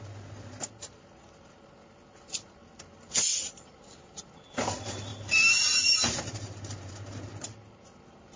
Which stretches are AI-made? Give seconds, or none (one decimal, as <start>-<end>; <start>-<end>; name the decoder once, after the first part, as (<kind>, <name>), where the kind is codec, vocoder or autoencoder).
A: 3.2-4.3 (vocoder, BigVGAN v2); 5.1-7.3